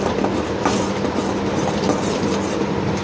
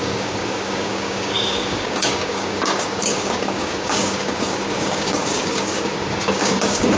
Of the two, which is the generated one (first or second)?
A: second